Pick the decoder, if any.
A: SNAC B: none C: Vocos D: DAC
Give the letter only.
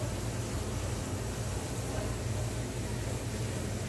B